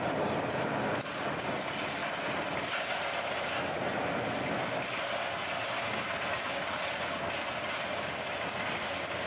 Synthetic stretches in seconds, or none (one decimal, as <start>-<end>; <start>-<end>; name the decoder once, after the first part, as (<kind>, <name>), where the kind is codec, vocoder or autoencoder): none